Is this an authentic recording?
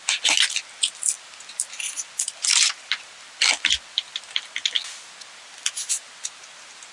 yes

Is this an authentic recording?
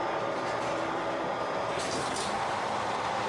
yes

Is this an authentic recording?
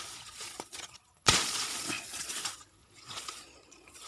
no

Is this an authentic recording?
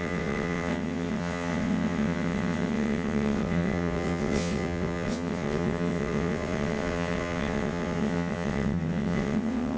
no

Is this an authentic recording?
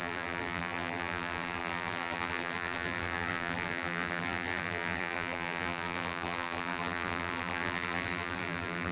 no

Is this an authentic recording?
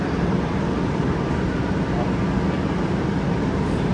yes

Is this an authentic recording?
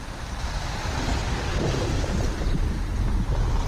yes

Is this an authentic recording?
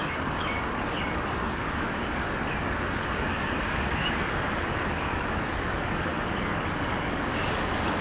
no